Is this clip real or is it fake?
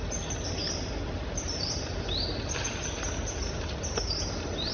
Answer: real